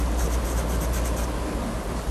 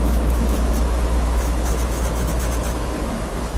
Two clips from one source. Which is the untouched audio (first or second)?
first